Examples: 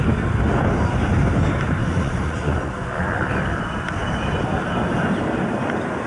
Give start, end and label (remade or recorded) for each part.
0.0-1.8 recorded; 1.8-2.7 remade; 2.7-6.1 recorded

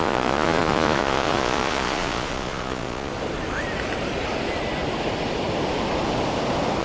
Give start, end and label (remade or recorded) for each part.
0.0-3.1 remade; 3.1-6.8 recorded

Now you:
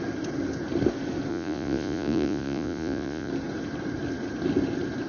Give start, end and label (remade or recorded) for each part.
0.0-1.3 recorded; 1.3-3.3 remade; 3.3-5.1 recorded

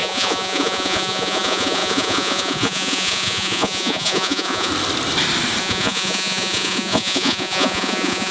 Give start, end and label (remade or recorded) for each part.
0.0-4.7 remade; 4.7-5.6 recorded; 5.6-8.3 remade

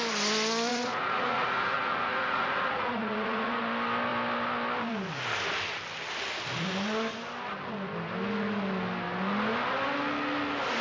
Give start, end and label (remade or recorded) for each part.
0.0-0.7 recorded; 0.7-3.6 remade; 3.6-10.8 recorded

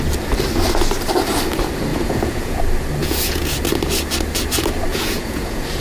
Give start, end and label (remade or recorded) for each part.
0.0-1.9 recorded; 1.9-2.6 remade; 2.6-3.0 recorded; 3.0-3.6 remade; 3.6-4.9 recorded; 4.9-5.8 remade

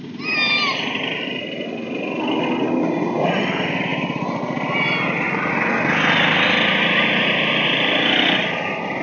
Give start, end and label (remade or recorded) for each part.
0.0-9.0 recorded